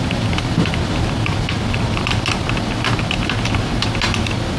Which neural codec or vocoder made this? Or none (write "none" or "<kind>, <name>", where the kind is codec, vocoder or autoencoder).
none